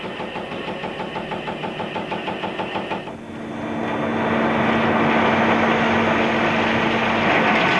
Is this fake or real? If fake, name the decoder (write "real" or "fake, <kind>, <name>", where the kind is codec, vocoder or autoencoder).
real